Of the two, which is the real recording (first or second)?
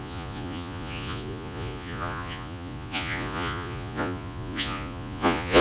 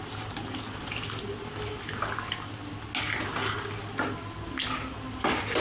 second